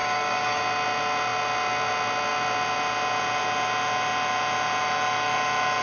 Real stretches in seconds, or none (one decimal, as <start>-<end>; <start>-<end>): 0.6-5.8